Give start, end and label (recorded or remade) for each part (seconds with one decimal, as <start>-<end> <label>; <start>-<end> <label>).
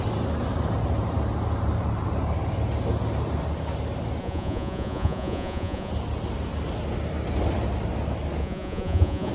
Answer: 0.0-4.2 recorded; 4.2-5.9 remade; 5.9-8.4 recorded; 8.4-9.3 remade